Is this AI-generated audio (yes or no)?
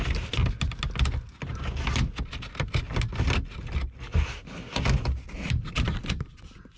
no